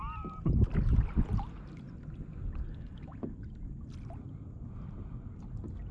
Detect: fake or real real